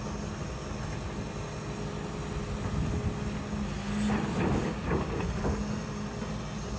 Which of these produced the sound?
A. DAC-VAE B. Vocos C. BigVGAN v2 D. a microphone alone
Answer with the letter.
D